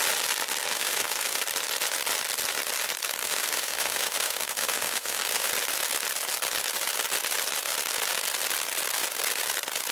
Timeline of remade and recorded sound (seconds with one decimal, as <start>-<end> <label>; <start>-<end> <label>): 0.0-0.7 recorded; 0.7-1.4 remade; 1.4-3.2 recorded; 3.2-5.5 remade; 5.5-9.9 recorded